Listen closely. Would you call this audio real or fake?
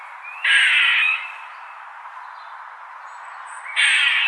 real